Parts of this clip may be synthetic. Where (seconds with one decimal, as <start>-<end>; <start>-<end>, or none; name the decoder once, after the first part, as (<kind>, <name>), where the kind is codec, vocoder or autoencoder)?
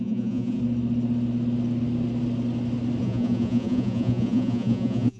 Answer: 0.0-0.6 (vocoder, Vocos); 3.0-5.2